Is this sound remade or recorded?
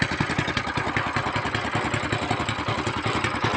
recorded